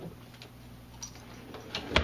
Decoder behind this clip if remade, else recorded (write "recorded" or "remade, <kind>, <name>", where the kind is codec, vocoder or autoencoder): recorded